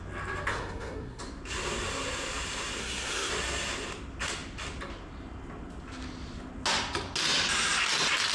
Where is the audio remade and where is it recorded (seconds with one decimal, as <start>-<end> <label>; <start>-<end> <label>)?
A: 0.0-0.5 recorded; 0.5-1.2 remade; 1.2-2.8 recorded; 2.8-3.3 remade; 3.3-8.3 recorded